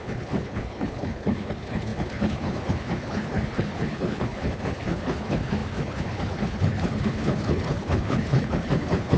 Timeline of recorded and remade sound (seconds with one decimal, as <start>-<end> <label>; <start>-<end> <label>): 0.0-9.2 remade